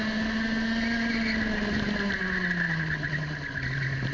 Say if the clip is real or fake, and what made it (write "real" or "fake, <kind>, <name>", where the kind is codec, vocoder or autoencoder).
real